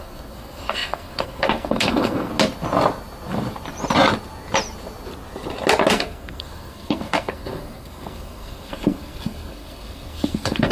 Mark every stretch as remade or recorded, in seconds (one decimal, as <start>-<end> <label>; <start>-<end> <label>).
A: 0.0-2.3 remade; 2.3-5.9 recorded; 5.9-10.7 remade